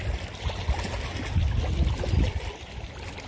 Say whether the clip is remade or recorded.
recorded